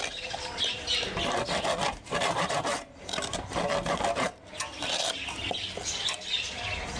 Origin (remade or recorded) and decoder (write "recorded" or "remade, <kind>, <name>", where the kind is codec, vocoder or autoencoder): recorded